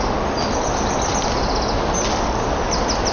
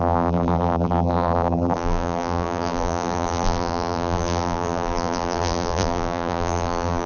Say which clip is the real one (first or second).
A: first